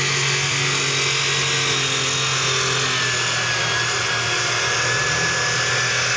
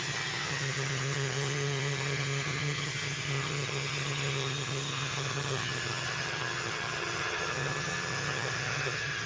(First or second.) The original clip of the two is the first